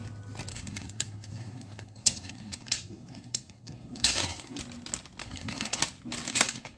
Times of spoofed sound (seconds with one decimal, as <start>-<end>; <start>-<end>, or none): 0.5-4.6; 5.2-5.8; 6.3-6.8

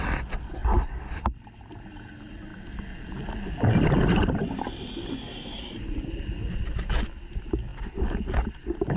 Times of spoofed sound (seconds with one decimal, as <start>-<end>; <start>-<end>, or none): 0.6-1.7

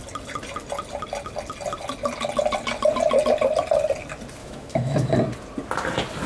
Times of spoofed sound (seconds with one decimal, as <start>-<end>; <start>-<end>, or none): 4.4-5.1

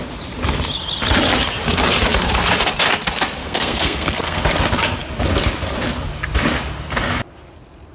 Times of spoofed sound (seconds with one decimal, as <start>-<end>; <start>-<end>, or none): 3.4-4.4

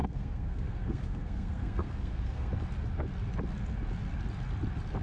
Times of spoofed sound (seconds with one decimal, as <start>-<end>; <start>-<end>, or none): 0.0-2.5

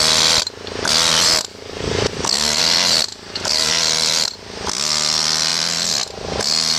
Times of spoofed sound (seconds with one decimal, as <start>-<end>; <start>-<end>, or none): 1.5-2.6; 3.1-3.7